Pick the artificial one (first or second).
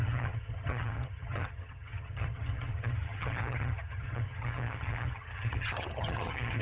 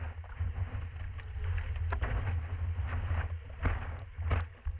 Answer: first